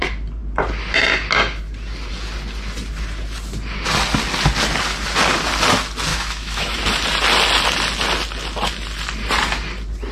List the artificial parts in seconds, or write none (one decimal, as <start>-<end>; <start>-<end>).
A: 6.1-6.8